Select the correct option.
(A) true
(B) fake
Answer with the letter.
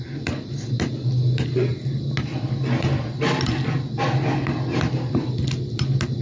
A